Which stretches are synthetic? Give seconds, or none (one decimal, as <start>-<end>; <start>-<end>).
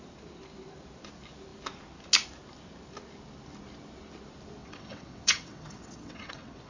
4.6-6.7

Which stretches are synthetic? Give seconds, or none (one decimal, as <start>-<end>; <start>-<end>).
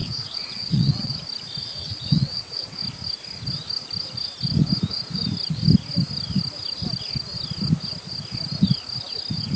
0.0-1.2; 1.6-2.8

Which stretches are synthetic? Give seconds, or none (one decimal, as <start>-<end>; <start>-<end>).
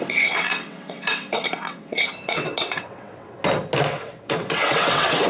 0.0-3.4; 3.9-5.3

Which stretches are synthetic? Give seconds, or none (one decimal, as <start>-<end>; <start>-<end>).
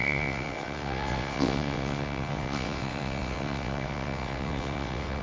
0.0-5.2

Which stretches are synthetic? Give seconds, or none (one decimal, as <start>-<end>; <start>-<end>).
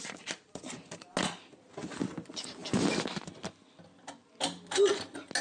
none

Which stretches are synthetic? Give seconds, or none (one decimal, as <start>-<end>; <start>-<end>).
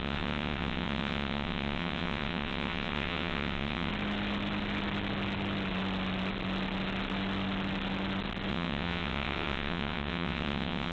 0.0-3.9; 8.5-10.9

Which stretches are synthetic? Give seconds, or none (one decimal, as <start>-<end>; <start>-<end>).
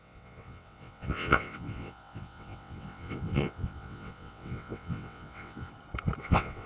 0.0-5.7; 6.2-6.7